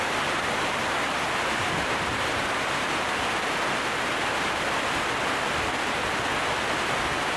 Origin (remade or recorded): recorded